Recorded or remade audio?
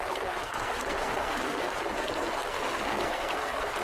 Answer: remade